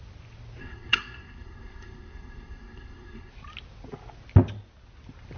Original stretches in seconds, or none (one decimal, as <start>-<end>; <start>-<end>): 0.0-0.6; 3.3-5.4